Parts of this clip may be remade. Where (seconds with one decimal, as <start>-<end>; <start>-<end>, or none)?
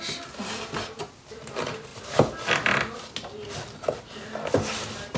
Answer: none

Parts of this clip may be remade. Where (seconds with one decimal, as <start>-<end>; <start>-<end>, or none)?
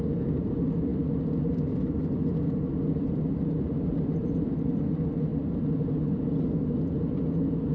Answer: none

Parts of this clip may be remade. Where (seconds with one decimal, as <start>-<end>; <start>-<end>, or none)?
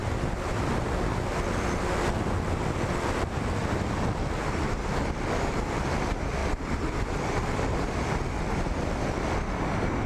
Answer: 6.4-7.8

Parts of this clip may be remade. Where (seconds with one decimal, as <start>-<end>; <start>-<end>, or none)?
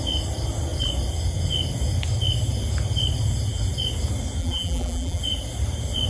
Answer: 4.4-5.2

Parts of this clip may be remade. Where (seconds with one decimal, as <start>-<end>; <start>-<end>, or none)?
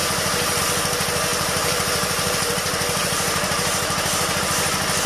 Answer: 0.0-0.6; 1.3-4.4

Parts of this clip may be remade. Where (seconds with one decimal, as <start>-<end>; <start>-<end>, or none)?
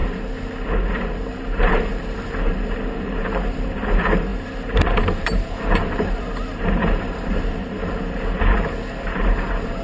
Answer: 1.3-9.8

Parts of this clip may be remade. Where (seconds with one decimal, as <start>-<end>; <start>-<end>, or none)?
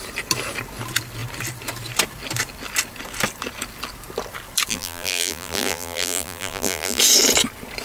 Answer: 4.7-7.0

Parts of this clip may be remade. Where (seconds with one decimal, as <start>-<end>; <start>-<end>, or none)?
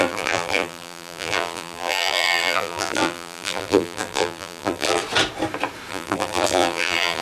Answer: 0.0-5.0; 5.9-7.2